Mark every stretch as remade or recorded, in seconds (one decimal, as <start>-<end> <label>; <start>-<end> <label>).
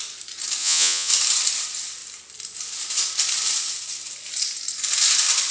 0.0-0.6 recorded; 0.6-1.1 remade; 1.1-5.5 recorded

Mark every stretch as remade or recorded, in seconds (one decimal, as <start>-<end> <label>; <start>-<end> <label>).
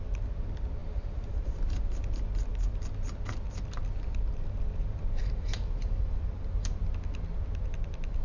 0.0-0.8 recorded; 0.8-1.8 remade; 1.8-4.7 recorded; 4.7-6.8 remade; 6.8-8.2 recorded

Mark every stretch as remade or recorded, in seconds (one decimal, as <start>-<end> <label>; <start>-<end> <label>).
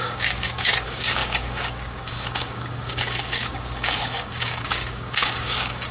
0.0-5.9 remade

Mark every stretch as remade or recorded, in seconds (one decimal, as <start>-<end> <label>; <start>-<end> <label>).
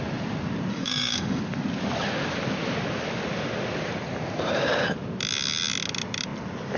0.0-0.7 recorded; 0.7-1.4 remade; 1.4-6.8 recorded